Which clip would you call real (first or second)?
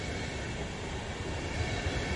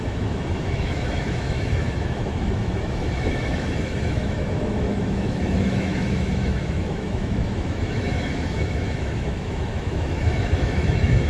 first